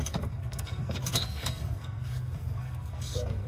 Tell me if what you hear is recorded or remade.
remade